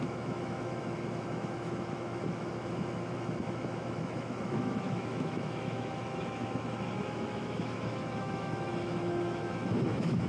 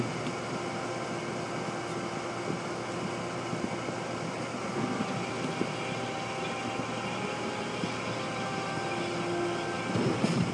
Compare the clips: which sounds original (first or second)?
second